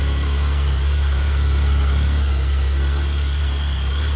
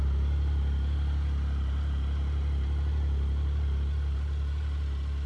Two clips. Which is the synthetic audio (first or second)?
first